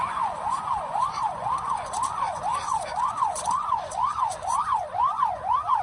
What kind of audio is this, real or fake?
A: fake